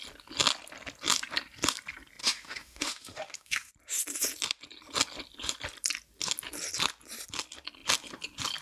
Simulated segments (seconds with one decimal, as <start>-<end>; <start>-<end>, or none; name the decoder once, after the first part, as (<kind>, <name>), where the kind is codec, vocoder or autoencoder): 2.2-3.7 (autoencoder, DAC-VAE)

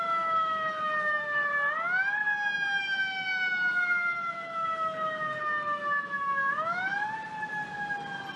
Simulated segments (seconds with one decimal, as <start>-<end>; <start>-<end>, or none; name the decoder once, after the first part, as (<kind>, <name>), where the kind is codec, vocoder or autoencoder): 0.0-1.5 (autoencoder, DAC-VAE); 2.8-6.9